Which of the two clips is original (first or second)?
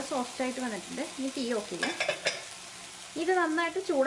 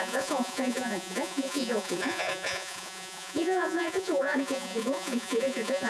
first